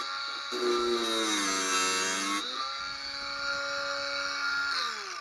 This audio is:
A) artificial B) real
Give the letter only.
B